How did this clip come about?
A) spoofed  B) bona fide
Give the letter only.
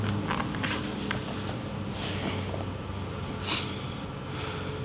B